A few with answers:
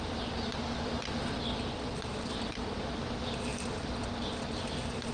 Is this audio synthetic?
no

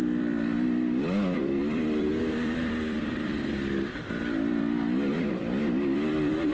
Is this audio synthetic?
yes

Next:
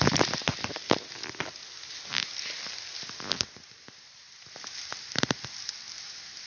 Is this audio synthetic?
no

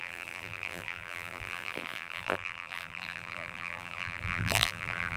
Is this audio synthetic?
yes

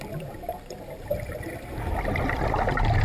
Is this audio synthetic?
no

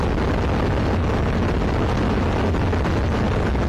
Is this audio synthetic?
no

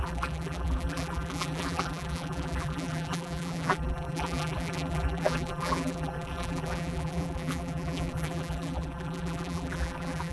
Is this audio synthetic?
yes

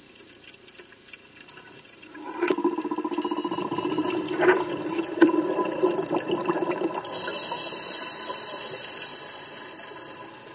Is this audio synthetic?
yes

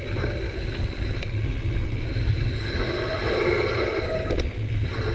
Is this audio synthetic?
no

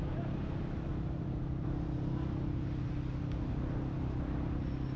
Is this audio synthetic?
no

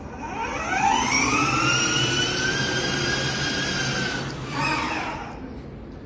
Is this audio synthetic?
no